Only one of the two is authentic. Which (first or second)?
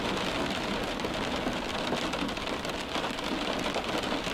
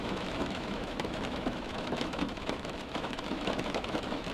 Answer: first